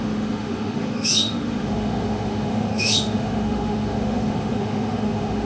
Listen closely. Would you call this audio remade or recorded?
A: remade